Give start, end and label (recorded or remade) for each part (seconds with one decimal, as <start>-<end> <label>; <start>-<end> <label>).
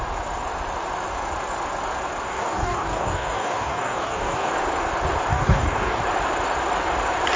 0.0-2.3 recorded; 2.3-4.5 remade; 4.5-5.3 recorded; 5.3-6.0 remade; 6.0-7.4 recorded